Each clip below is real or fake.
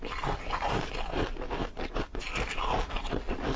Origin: real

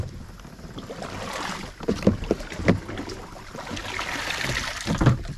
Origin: real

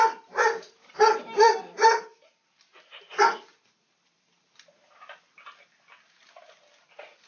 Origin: real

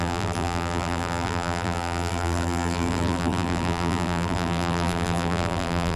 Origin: fake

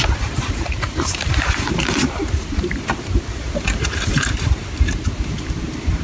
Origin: fake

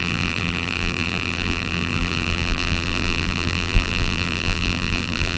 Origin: fake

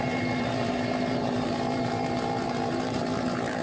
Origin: fake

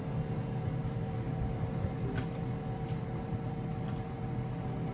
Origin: fake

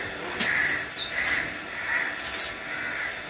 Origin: real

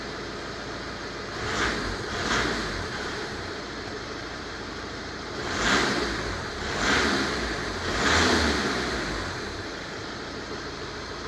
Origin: fake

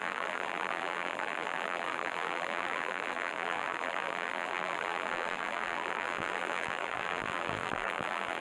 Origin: fake